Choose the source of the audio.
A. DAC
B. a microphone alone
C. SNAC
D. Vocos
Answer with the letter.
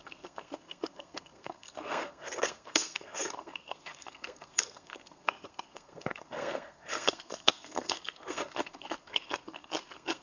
C